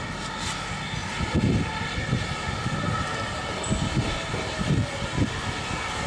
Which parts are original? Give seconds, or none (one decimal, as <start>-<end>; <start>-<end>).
0.0-6.1